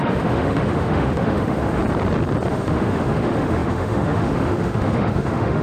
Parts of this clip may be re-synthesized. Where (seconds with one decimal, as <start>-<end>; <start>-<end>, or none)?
0.0-1.8; 2.5-5.6